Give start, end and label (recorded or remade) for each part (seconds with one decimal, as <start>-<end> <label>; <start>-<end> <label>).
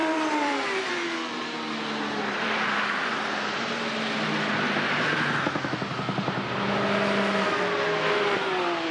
0.0-0.9 remade; 0.9-8.9 recorded